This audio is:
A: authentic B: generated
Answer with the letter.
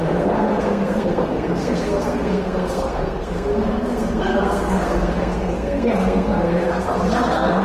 B